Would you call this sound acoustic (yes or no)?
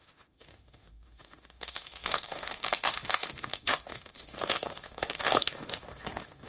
no